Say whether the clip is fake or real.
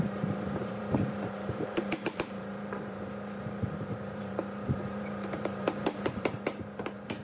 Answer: fake